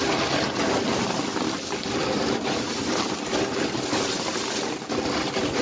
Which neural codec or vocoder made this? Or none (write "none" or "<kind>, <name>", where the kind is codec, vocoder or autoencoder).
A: none